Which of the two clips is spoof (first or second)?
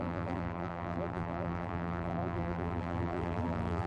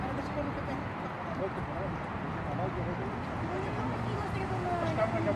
first